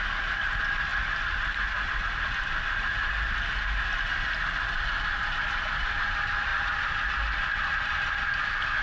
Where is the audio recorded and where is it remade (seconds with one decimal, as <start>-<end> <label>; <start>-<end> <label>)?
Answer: 0.0-8.8 recorded